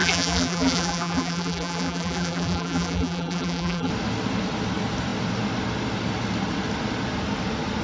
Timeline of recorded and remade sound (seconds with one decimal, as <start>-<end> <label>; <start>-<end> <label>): 0.0-3.9 remade; 3.9-7.8 recorded